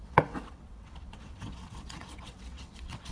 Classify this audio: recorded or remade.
remade